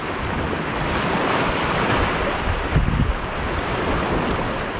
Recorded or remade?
recorded